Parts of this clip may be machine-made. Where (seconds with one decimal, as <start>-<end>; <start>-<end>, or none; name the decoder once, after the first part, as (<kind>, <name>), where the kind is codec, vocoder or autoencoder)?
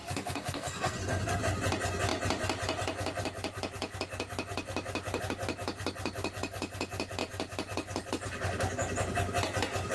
0.0-1.4 (codec, SNAC)